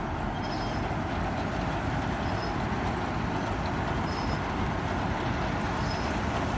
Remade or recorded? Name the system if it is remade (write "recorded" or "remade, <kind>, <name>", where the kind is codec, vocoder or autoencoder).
recorded